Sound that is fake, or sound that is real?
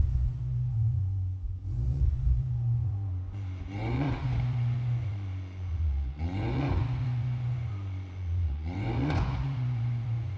fake